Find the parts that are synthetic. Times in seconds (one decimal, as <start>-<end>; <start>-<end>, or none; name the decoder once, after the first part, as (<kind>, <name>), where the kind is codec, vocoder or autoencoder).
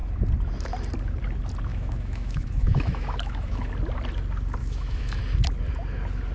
1.7-3.7 (autoencoder, DAC-VAE); 4.6-5.2